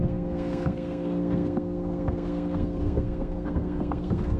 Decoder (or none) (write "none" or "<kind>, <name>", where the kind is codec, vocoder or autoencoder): codec, SNAC